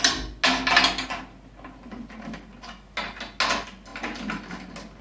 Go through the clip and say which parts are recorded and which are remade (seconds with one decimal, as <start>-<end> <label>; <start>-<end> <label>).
0.0-5.0 recorded